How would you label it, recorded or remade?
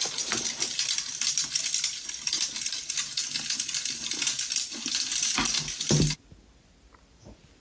recorded